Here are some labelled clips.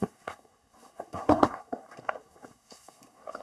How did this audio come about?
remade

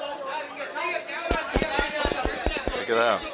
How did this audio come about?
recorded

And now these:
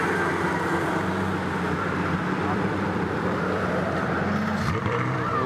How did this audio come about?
remade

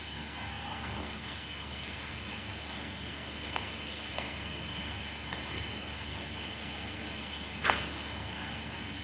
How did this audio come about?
remade